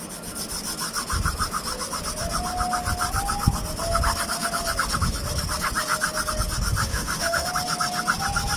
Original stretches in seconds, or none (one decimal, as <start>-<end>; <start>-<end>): 0.0-6.9; 7.5-8.6

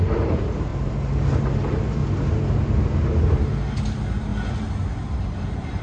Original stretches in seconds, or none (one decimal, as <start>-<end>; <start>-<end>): 2.0-3.8; 4.3-5.1